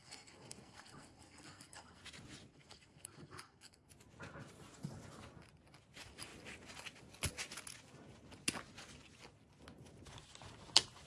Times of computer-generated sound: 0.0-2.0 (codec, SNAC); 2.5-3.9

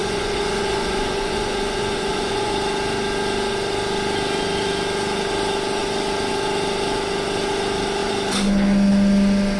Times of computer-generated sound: 0.0-2.5 (vocoder, Vocos)

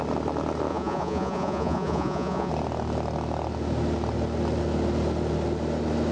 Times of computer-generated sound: 0.7-2.5 (vocoder, Vocos)

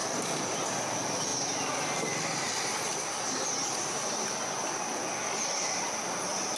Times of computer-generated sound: 0.0-0.6 (vocoder, BigVGAN v2)

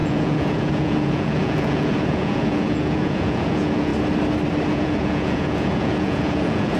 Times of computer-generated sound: 0.0-3.9 (vocoder, Vocos); 4.7-6.8

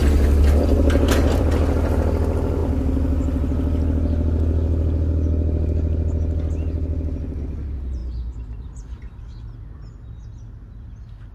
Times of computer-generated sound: none